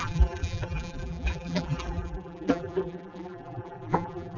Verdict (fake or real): fake